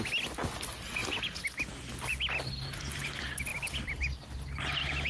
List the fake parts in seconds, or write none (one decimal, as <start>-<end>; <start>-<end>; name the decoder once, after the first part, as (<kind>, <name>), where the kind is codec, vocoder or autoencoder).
1.0-1.7 (vocoder, BigVGAN v2); 3.5-4.2

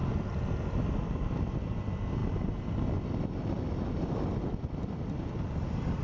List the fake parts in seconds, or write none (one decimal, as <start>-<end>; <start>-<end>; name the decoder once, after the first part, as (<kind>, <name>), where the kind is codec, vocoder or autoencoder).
none